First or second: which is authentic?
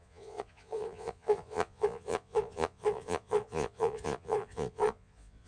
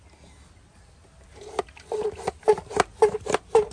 second